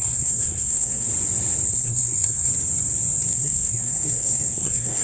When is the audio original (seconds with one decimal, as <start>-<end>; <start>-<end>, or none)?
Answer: 1.1-1.7; 2.5-3.3